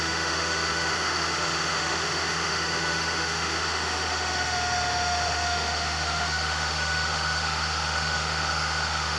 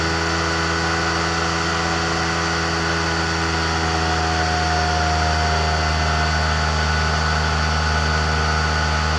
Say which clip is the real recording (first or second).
second